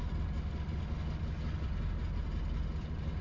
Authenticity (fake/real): real